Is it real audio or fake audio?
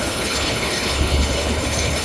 fake